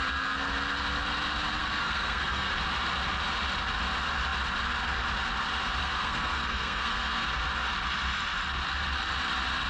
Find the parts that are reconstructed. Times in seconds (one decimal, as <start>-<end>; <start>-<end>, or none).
1.6-2.5; 5.8-7.3